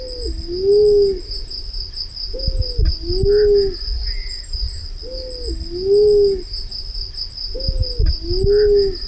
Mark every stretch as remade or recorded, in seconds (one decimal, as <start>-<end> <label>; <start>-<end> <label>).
0.0-9.1 recorded